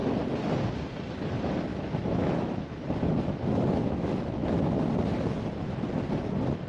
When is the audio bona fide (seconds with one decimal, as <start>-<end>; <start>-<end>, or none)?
0.0-1.7; 2.8-3.8; 4.8-6.7